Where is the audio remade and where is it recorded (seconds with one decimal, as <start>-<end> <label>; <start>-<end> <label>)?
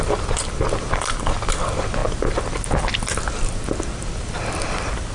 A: 0.0-5.1 recorded